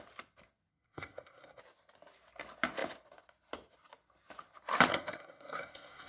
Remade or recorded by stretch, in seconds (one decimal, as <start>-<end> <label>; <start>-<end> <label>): 0.0-0.7 recorded; 0.7-1.6 remade; 1.6-4.9 recorded; 4.9-6.1 remade